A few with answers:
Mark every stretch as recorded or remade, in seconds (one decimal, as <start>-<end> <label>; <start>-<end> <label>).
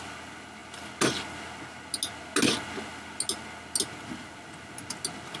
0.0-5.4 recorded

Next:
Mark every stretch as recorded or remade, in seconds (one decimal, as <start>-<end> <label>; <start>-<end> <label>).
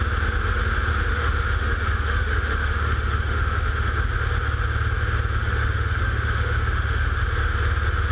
0.0-0.9 recorded; 0.9-3.9 remade; 3.9-5.4 recorded; 5.4-7.2 remade; 7.2-8.1 recorded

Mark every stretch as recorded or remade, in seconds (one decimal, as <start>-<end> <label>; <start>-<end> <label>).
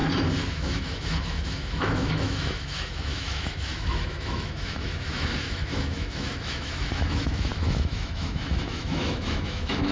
0.0-0.5 recorded; 0.5-9.9 remade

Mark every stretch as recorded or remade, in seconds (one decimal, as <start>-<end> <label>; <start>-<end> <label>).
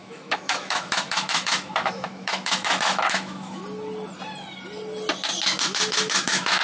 0.0-3.6 remade; 3.6-5.6 recorded; 5.6-6.6 remade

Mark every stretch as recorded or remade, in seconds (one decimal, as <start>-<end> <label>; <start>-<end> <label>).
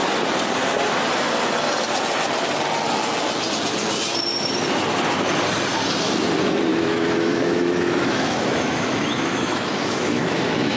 0.0-6.7 recorded; 6.7-10.8 remade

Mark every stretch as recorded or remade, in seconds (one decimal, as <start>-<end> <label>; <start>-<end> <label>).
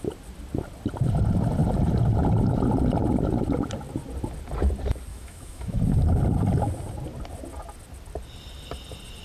0.0-5.1 recorded; 5.1-5.8 remade; 5.8-9.2 recorded